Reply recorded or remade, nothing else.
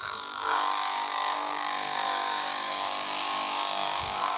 remade